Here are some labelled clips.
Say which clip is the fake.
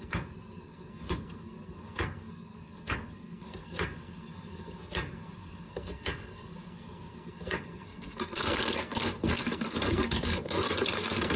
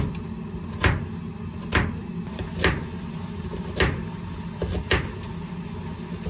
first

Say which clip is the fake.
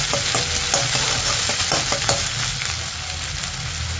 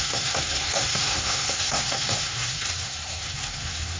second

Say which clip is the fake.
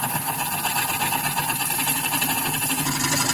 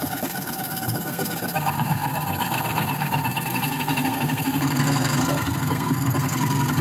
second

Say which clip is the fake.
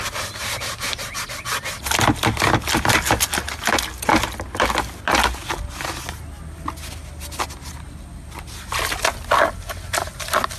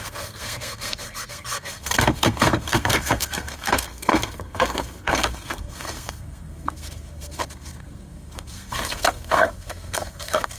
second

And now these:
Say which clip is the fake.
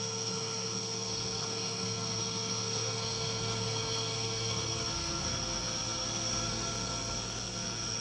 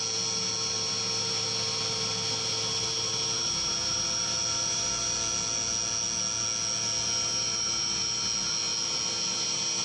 first